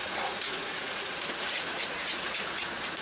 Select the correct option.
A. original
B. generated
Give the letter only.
B